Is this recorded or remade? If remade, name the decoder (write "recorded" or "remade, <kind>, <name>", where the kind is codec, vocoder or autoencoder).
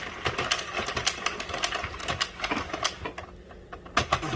recorded